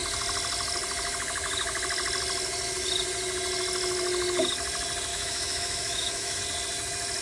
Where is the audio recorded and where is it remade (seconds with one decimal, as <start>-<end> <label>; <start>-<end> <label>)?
0.0-5.1 recorded; 5.1-6.4 remade; 6.4-7.2 recorded

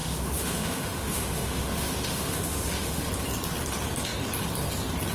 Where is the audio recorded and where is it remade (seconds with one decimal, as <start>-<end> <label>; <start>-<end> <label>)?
0.0-3.1 remade; 3.1-5.1 recorded

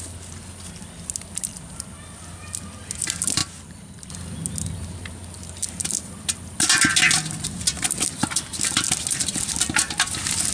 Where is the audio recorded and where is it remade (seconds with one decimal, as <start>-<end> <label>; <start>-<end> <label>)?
0.0-10.5 recorded

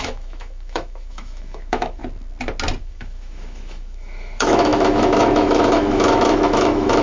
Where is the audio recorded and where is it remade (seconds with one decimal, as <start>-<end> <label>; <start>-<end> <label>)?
0.0-2.0 remade; 2.0-2.8 recorded; 2.8-7.0 remade

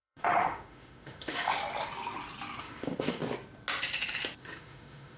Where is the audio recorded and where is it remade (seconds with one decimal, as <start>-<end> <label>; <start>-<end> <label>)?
0.0-1.6 remade; 1.6-2.6 recorded; 2.6-3.2 remade; 3.2-4.4 recorded; 4.4-5.2 remade

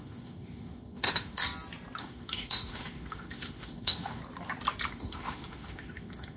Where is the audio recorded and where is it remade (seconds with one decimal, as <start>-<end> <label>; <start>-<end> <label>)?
0.0-1.4 remade; 1.4-2.0 recorded; 2.0-4.2 remade; 4.2-4.9 recorded; 4.9-6.4 remade

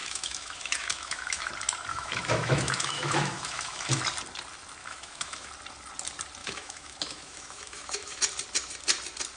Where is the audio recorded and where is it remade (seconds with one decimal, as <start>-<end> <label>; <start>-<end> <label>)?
0.0-1.5 remade; 1.5-1.9 recorded; 1.9-4.0 remade; 4.0-4.8 recorded; 4.8-5.5 remade; 5.5-6.4 recorded; 6.4-8.2 remade; 8.2-9.4 recorded